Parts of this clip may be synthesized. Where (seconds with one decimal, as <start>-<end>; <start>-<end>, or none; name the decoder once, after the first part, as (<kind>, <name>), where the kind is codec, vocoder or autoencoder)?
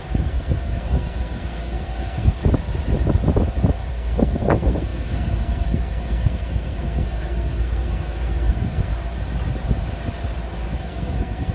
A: 0.0-2.4 (codec, SNAC); 3.9-8.9; 10.8-11.5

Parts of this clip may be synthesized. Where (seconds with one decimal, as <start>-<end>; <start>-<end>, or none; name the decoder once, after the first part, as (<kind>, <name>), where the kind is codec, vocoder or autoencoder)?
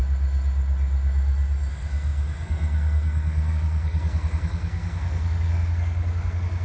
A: 1.7-6.6 (codec, SNAC)